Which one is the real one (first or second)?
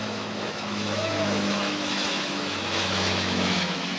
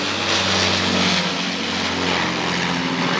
second